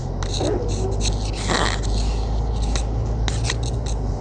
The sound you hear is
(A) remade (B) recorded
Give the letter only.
B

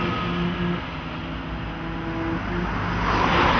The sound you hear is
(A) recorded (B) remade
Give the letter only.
A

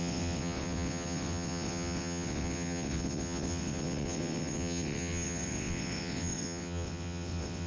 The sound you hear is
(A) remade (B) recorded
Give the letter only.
A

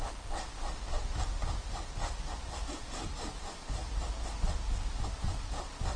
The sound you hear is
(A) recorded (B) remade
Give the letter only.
A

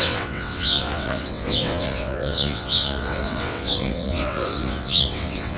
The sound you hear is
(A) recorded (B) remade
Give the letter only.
B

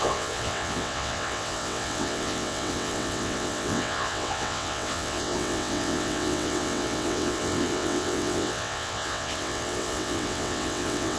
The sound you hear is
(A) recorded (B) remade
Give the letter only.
B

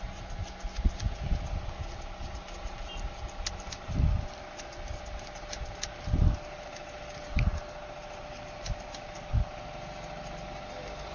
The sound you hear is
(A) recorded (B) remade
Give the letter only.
A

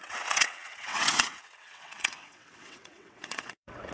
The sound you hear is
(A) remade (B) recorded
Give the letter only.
A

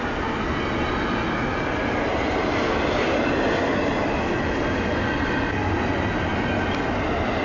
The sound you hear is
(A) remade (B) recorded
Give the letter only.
B